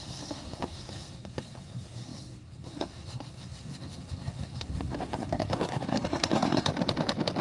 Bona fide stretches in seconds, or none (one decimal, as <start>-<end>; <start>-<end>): 6.7-7.4